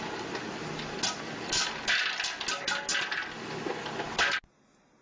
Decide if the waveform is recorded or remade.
recorded